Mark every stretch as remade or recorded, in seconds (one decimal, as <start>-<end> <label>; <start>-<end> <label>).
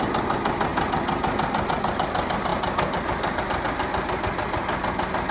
0.0-5.3 recorded